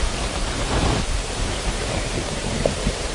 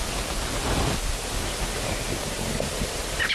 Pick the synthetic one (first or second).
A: first